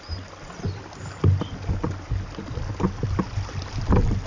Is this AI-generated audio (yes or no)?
no